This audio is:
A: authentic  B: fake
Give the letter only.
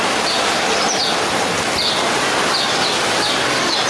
A